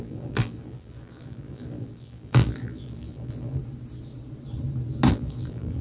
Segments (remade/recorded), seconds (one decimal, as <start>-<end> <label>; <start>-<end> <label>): 0.0-3.6 remade; 3.6-5.1 recorded; 5.1-5.8 remade